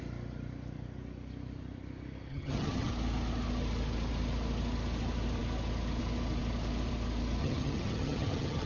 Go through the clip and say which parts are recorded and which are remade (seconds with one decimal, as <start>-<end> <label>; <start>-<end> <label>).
0.0-2.3 recorded; 2.3-2.9 remade; 2.9-7.4 recorded; 7.4-8.7 remade